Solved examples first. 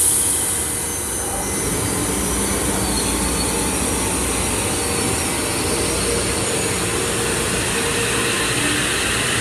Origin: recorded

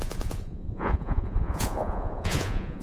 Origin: remade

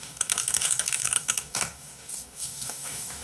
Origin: remade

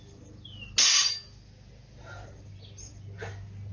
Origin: recorded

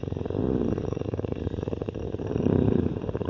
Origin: remade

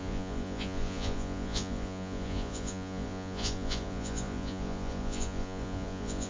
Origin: remade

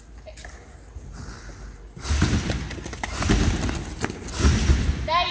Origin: recorded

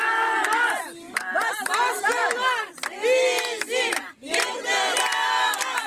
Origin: recorded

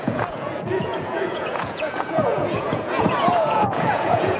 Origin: remade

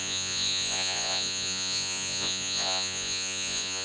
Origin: remade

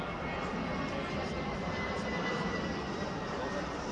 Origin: recorded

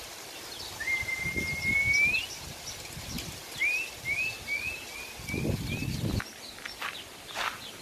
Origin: recorded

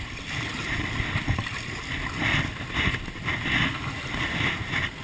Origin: recorded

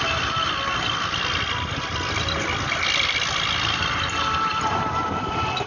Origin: recorded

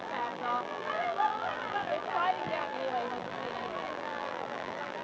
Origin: remade